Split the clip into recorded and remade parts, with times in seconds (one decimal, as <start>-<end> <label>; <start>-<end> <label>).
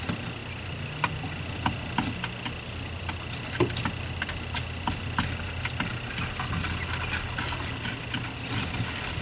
0.0-9.2 recorded